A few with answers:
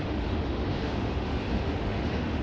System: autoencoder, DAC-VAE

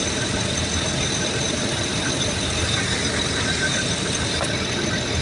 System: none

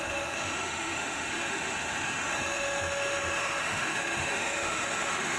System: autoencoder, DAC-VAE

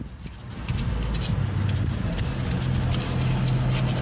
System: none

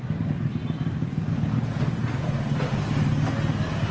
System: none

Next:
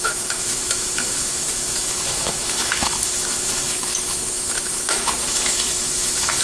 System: autoencoder, DAC-VAE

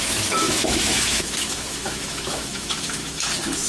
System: autoencoder, DAC-VAE